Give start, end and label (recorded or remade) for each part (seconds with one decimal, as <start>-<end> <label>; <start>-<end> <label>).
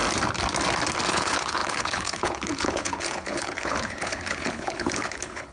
0.0-1.1 recorded; 1.1-5.5 remade